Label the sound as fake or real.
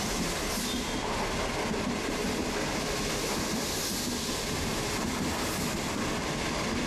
real